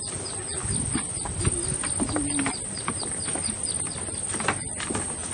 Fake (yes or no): no